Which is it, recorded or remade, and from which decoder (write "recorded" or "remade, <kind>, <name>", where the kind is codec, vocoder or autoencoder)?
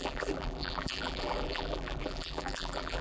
remade, vocoder, BigVGAN v2